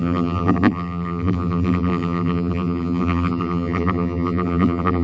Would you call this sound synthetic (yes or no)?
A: yes